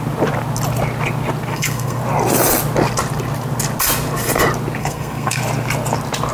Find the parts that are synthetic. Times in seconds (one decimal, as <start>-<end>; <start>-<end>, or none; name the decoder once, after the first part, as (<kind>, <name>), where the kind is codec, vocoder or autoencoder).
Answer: 1.5-2.0 (codec, SNAC); 4.8-5.4